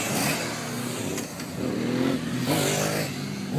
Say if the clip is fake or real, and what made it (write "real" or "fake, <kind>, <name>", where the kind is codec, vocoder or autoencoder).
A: real